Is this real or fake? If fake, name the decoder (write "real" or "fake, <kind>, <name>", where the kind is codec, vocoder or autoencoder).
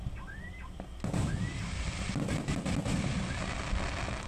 real